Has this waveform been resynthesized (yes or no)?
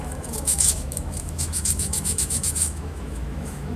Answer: yes